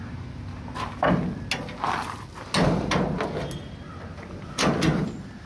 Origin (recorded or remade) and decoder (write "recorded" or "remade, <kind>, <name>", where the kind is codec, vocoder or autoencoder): recorded